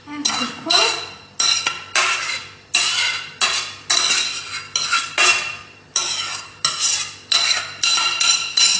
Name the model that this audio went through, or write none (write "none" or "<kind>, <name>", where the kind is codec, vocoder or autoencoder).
none